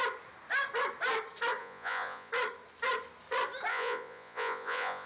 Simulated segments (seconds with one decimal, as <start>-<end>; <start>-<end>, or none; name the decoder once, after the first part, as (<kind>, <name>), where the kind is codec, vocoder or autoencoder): 1.6-2.3 (vocoder, Vocos); 3.7-5.1